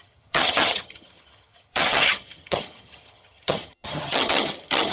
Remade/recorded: remade